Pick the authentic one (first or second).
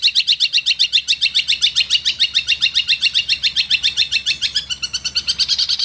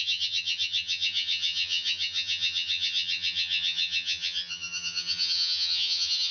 first